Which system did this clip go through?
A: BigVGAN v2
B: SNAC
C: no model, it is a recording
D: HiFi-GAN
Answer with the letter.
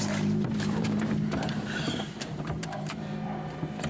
A